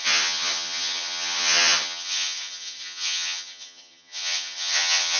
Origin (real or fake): fake